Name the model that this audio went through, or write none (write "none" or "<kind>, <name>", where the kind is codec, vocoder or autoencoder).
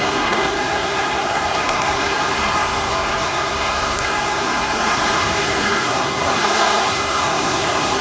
codec, SNAC